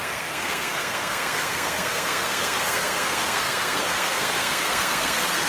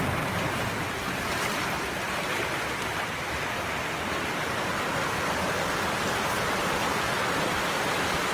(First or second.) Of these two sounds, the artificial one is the first